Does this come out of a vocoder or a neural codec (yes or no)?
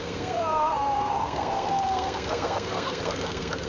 yes